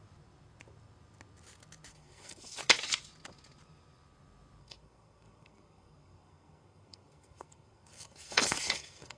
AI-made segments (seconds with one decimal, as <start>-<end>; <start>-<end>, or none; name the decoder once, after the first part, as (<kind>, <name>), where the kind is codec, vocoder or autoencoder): 1.9-2.6 (codec, SNAC); 4.6-9.2